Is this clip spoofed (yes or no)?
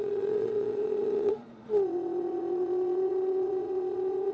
yes